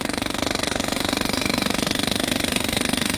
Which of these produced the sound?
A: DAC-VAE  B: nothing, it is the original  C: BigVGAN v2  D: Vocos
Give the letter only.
A